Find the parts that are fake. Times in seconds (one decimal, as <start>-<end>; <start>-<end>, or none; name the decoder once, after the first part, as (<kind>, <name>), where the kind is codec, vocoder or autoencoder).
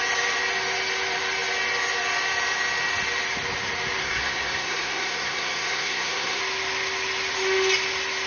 4.0-6.4 (codec, SNAC)